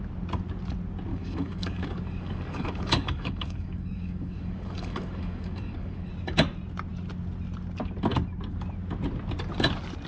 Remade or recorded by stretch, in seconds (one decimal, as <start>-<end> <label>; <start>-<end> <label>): 0.0-1.1 recorded; 1.1-6.1 remade; 6.1-10.1 recorded